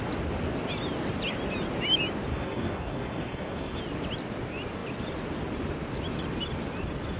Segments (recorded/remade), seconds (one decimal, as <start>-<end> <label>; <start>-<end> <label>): 0.0-2.3 recorded; 2.3-3.8 remade; 3.8-7.2 recorded